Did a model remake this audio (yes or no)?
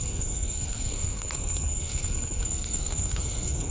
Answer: yes